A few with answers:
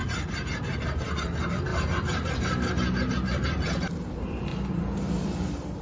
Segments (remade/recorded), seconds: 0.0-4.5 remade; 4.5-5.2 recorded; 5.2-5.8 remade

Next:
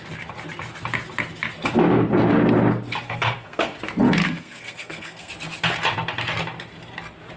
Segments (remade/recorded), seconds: 0.0-2.9 recorded; 2.9-3.8 remade; 3.8-4.2 recorded; 4.2-5.3 remade; 5.3-7.4 recorded

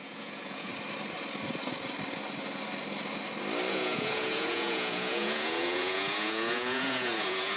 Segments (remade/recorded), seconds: 0.0-0.7 remade; 0.7-3.7 recorded; 3.7-7.6 remade

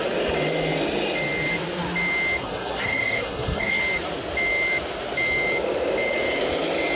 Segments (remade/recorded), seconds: 0.0-2.4 recorded; 2.4-3.8 remade; 3.8-7.0 recorded

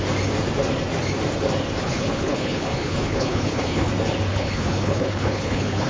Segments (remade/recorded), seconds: 0.0-1.8 recorded; 1.8-3.9 remade; 3.9-4.3 recorded; 4.3-5.9 remade

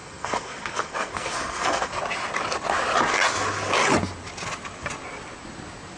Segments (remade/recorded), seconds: 0.0-2.0 remade; 2.0-6.0 recorded

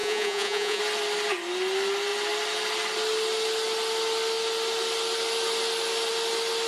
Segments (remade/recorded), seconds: 0.0-0.8 remade; 0.8-6.7 recorded